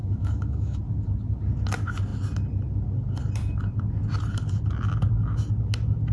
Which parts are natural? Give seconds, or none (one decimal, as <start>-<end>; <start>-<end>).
0.8-6.1